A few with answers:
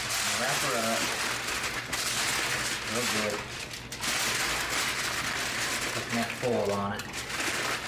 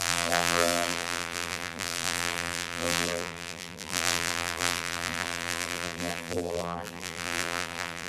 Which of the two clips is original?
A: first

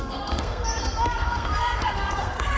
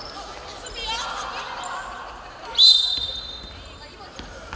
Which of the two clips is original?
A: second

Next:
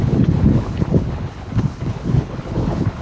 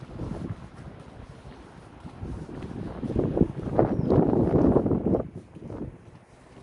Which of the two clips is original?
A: second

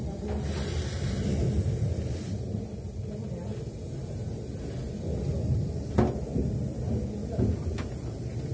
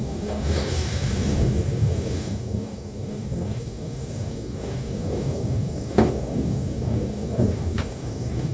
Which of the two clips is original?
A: first